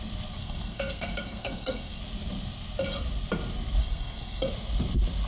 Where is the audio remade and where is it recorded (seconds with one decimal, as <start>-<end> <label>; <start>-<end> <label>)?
0.0-0.4 recorded; 0.4-2.0 remade; 2.0-3.8 recorded; 3.8-4.5 remade; 4.5-5.3 recorded